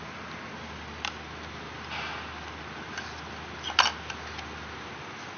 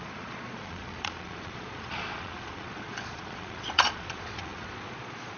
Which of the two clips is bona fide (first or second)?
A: first